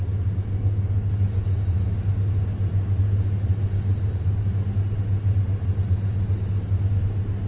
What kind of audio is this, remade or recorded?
recorded